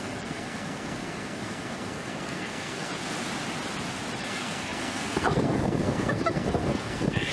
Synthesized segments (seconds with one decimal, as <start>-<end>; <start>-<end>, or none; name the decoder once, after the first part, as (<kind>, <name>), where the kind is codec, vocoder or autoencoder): 0.0-2.9 (codec, SNAC); 4.2-7.3